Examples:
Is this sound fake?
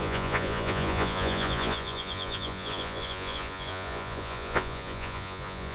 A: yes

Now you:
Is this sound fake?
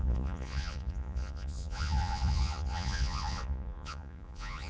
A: yes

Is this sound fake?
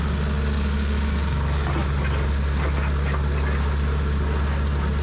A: no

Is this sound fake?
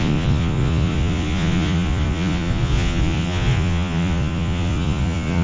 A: yes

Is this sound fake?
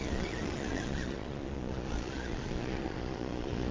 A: yes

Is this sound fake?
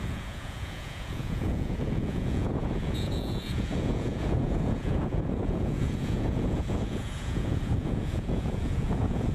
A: yes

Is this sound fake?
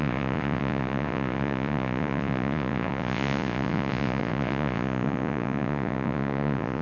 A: yes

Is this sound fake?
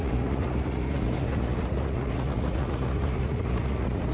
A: yes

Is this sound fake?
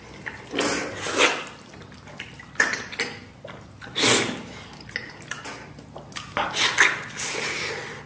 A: no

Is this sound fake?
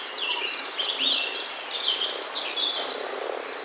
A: no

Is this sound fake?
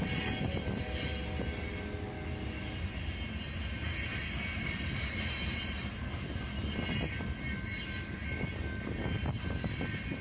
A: no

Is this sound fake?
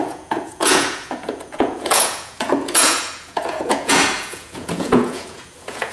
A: yes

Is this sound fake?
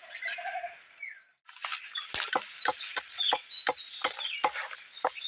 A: no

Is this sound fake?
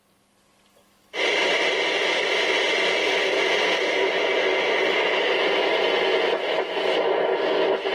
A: no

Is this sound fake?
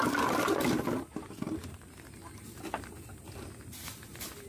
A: no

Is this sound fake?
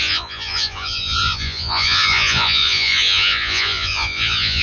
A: yes